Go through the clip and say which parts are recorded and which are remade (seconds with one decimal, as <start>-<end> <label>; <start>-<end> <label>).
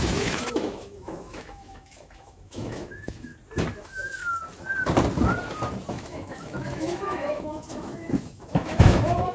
0.0-3.3 remade; 3.3-3.8 recorded; 3.8-4.2 remade; 4.2-5.9 recorded; 5.9-9.3 remade